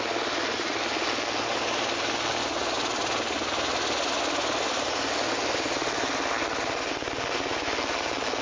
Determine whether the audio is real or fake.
real